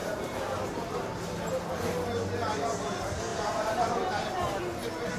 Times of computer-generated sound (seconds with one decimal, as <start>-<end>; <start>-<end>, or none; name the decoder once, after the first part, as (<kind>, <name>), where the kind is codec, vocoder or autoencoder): 0.0-1.7 (vocoder, BigVGAN v2); 3.3-4.0